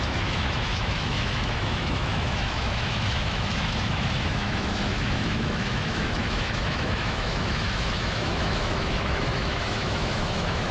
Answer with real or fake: fake